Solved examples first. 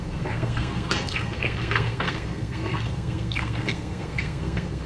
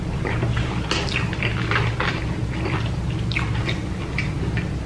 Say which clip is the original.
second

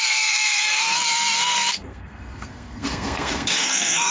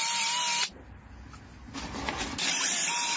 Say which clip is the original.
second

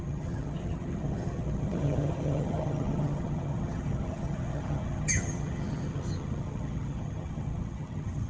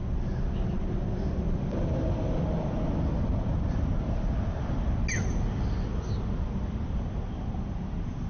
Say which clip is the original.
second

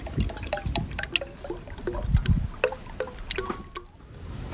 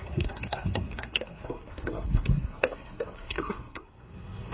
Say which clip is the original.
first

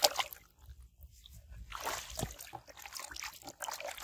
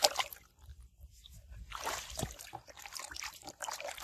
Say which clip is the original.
first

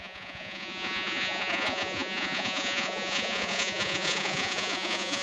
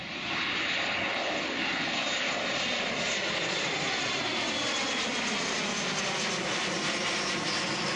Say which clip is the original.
second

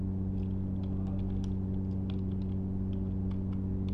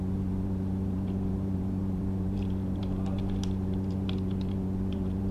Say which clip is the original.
first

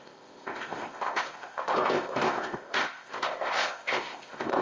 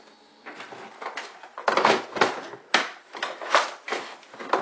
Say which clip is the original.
second